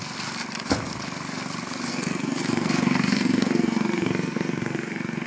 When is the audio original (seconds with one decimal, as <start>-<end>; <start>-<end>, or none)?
0.0-1.9